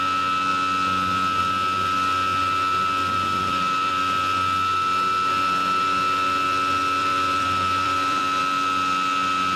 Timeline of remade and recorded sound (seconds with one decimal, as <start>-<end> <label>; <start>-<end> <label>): 0.0-3.4 recorded; 3.4-3.9 remade; 3.9-7.0 recorded; 7.0-8.4 remade; 8.4-9.6 recorded